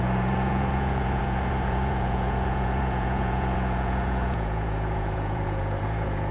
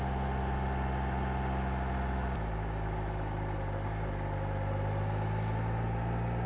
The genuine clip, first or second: second